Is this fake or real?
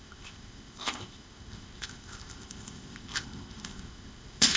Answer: fake